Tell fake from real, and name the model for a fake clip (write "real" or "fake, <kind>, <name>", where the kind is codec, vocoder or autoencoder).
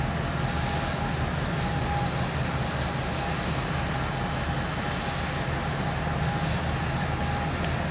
real